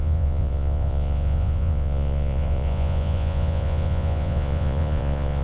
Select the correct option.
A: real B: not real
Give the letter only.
B